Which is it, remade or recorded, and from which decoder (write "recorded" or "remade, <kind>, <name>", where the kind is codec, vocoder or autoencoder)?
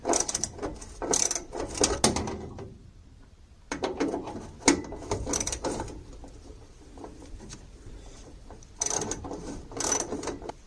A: recorded